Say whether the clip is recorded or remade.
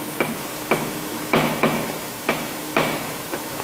remade